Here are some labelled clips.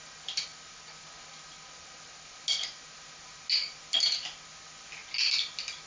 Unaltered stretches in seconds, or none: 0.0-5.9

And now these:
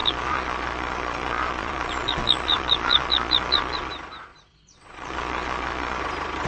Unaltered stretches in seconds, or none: 3.9-4.3; 6.0-6.5

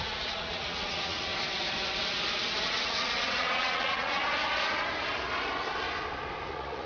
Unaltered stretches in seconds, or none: 1.3-2.6; 4.2-6.5